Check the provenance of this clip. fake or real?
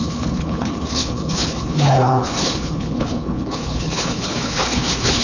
fake